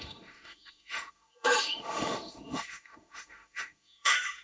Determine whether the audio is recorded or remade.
remade